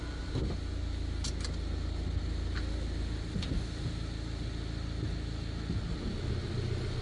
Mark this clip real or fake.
real